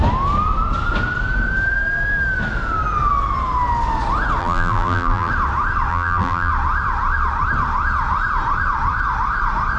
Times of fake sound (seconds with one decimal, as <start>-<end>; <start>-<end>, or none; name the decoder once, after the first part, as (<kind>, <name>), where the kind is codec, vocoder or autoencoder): 4.4-5.3 (vocoder, BigVGAN v2); 5.9-6.5